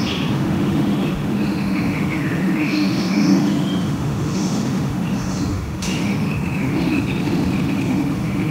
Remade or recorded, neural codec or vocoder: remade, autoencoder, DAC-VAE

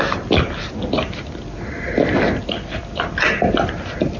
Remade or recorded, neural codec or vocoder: recorded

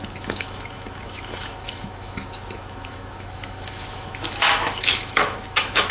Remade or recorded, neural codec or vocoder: remade, autoencoder, DAC-VAE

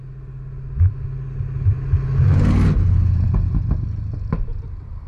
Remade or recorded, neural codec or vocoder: recorded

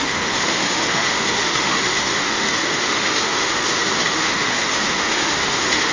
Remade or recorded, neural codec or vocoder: remade, autoencoder, DAC-VAE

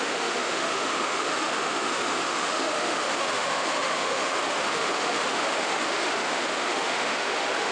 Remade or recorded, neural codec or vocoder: remade, autoencoder, DAC-VAE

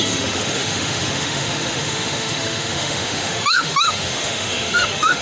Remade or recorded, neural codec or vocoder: remade, autoencoder, DAC-VAE